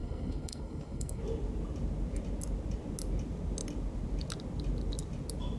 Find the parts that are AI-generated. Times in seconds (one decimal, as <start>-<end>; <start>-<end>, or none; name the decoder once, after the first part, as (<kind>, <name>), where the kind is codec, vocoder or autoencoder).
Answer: 0.0-1.2 (codec, SNAC)